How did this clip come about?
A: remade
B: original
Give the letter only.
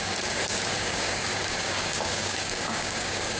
A